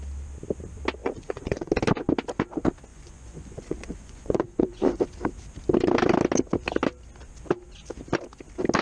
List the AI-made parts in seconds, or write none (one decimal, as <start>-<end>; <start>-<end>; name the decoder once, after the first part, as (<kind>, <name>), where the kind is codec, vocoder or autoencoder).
1.0-1.7 (vocoder, Vocos); 2.9-5.0